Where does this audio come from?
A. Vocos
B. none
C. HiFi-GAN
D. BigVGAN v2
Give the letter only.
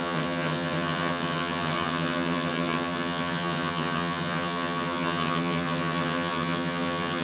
C